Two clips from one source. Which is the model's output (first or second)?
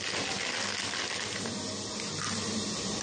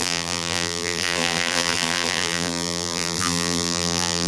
second